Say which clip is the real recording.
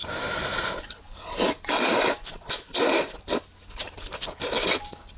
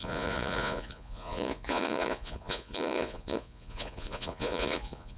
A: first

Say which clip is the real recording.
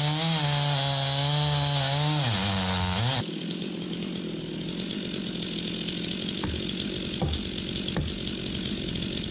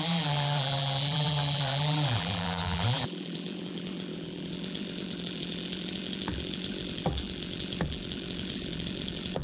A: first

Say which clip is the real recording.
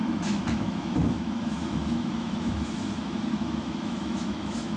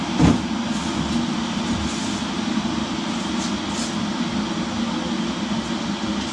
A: second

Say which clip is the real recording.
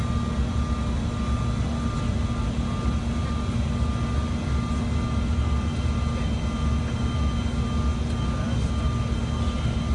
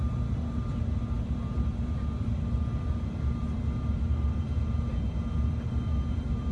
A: first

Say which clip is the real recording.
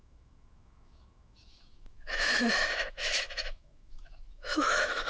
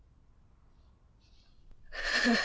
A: second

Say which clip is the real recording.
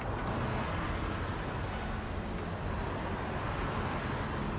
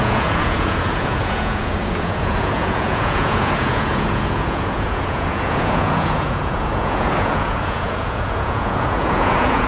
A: first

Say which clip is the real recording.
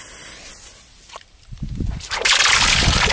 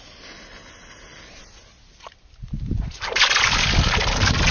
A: second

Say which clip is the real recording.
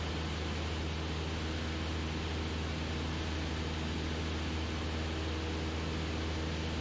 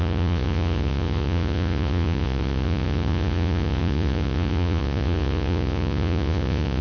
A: first